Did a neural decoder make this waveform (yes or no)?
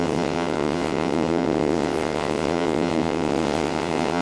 yes